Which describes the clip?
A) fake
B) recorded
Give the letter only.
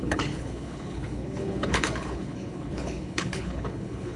A